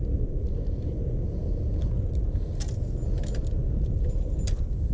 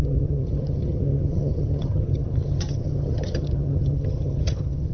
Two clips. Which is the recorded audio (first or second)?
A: first